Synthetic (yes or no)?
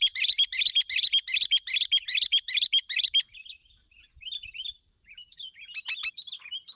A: no